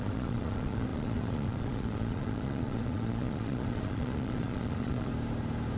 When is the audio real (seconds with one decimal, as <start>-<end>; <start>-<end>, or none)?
5.1-5.8